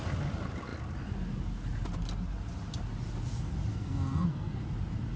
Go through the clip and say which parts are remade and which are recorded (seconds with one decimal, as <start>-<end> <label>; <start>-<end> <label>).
0.0-3.7 recorded; 3.7-4.6 remade; 4.6-5.2 recorded